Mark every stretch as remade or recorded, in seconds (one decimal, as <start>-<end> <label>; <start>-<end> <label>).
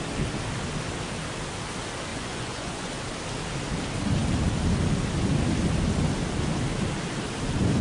0.0-2.1 recorded; 2.1-2.9 remade; 2.9-7.8 recorded